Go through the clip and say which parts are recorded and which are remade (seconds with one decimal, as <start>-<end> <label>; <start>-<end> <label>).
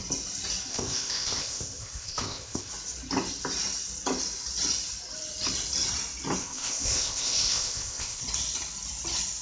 0.0-0.7 recorded; 0.7-2.7 remade; 2.7-6.4 recorded; 6.4-8.2 remade; 8.2-9.4 recorded